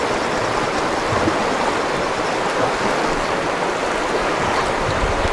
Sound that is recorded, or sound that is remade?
recorded